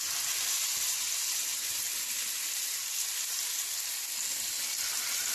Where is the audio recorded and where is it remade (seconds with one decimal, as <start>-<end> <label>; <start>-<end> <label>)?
0.0-5.3 recorded